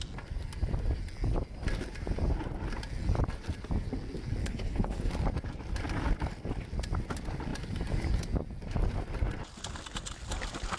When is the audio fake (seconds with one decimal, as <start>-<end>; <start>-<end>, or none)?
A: 4.4-5.1